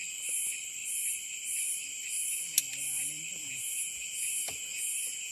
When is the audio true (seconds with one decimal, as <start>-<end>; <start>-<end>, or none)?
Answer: 0.0-3.4